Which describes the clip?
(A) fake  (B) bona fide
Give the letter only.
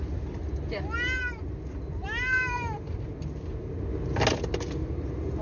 B